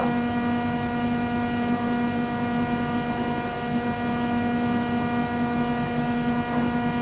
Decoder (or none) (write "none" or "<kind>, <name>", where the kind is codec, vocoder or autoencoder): none